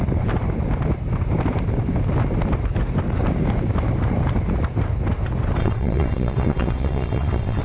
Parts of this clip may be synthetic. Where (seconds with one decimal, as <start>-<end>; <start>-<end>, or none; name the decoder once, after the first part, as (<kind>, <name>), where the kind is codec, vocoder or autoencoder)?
5.6-7.6 (vocoder, WaveNeXt)